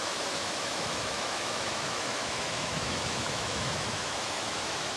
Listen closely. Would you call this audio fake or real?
fake